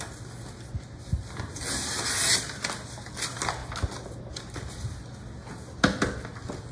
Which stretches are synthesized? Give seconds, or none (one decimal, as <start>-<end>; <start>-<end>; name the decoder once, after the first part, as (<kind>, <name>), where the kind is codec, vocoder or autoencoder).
none